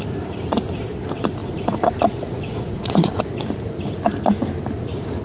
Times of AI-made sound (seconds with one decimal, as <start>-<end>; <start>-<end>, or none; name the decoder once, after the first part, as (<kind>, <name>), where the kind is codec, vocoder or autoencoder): 1.4-3.2 (vocoder, Vocos)